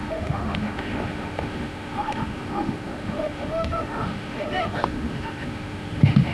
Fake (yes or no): yes